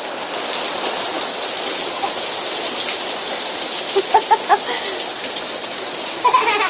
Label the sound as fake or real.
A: real